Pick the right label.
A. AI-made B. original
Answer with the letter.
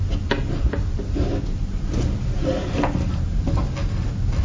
B